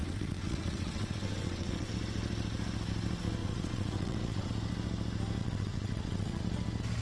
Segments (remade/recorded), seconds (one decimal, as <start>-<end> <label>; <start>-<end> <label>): 0.0-1.9 remade; 1.9-3.4 recorded; 3.4-4.5 remade; 4.5-5.4 recorded; 5.4-6.4 remade; 6.4-7.0 recorded